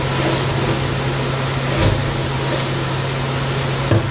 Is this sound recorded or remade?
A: recorded